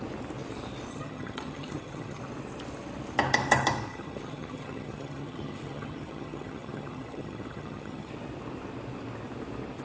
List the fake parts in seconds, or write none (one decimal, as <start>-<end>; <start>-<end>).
0.9-2.2; 3.9-8.1